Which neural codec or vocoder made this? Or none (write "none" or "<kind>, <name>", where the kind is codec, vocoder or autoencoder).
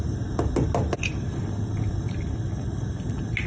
none